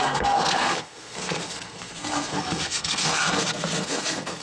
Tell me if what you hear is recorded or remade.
remade